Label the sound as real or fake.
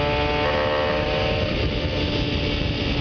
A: real